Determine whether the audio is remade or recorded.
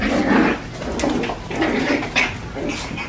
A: recorded